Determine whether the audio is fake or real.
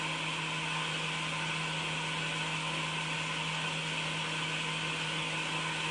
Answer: real